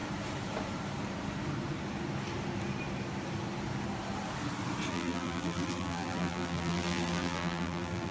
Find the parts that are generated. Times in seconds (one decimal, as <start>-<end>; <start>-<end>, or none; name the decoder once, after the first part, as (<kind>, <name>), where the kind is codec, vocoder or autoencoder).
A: 4.9-8.1 (vocoder, BigVGAN v2)